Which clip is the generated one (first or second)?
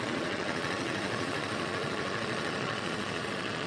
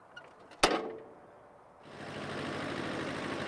first